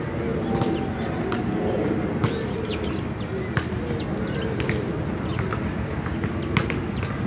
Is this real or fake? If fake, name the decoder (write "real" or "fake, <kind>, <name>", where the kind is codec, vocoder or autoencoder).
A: real